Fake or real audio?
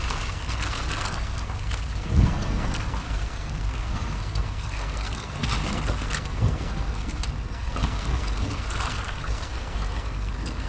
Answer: fake